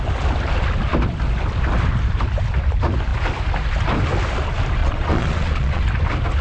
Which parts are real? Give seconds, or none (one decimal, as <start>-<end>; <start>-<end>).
0.0-4.8; 5.8-6.4